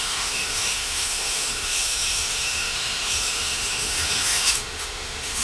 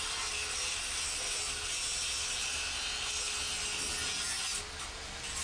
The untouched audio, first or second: second